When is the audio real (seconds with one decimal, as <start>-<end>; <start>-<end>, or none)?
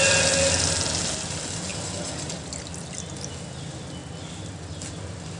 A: 0.0-5.4